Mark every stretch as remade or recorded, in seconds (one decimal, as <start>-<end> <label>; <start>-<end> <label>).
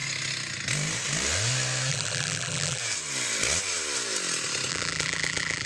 0.0-1.9 recorded; 1.9-2.8 remade; 2.8-4.7 recorded; 4.7-5.7 remade